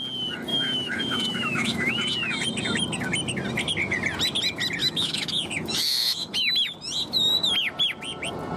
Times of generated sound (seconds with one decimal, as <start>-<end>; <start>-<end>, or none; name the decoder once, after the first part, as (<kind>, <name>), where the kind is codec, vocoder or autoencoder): 0.5-1.9 (autoencoder, DAC-VAE); 4.8-6.5